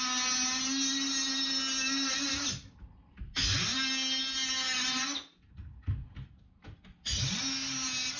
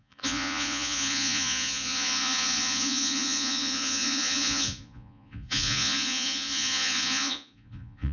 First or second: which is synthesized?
second